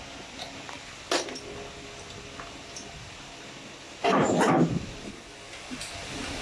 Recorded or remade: recorded